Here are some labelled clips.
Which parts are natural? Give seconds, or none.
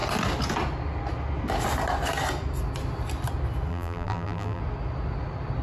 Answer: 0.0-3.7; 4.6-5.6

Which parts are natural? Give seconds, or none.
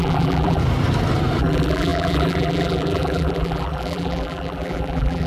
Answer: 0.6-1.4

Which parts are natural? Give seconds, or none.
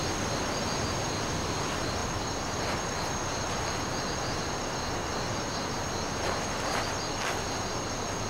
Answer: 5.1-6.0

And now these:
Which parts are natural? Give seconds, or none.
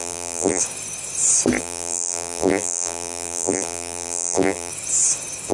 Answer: 0.6-1.6; 4.7-5.5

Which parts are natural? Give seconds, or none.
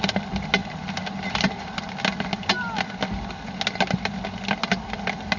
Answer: 0.0-0.6; 1.9-5.4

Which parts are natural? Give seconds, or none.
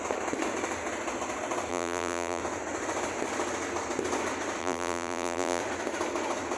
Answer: 0.0-1.7; 2.4-4.6; 5.6-6.6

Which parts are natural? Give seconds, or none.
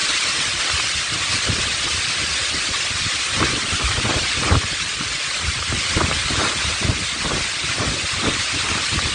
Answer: 0.0-9.1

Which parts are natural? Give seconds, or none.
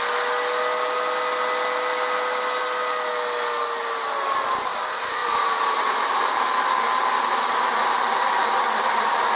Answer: 0.0-5.2; 6.6-9.4